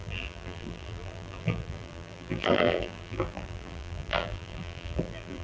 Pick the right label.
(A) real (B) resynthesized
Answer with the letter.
B